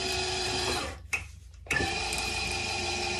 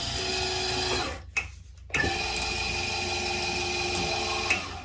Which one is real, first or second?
second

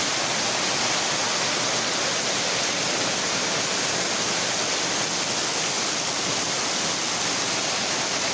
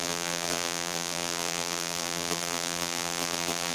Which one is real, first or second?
first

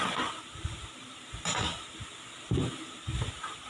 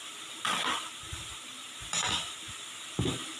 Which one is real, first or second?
first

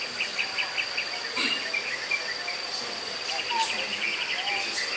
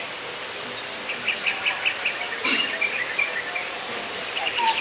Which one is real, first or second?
first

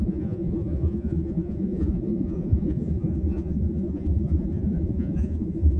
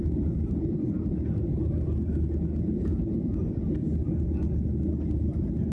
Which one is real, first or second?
second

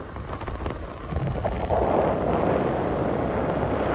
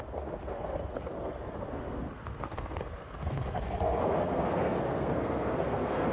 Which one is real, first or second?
first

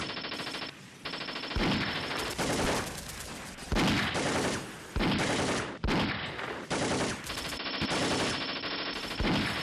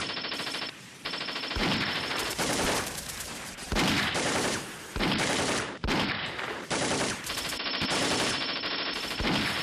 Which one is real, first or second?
first